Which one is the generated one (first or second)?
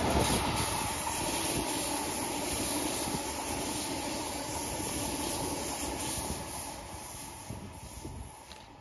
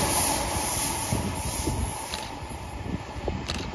second